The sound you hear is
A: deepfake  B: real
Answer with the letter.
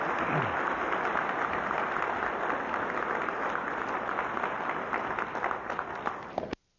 B